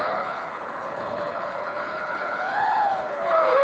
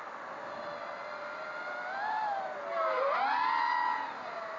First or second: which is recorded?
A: second